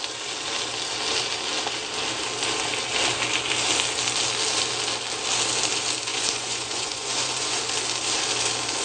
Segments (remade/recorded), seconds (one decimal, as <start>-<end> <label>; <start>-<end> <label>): 0.0-6.1 recorded; 6.1-7.6 remade; 7.6-8.8 recorded